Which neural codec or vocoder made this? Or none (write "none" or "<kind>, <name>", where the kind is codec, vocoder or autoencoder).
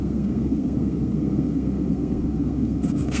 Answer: codec, SNAC